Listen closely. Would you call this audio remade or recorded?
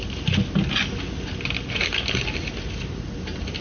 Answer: recorded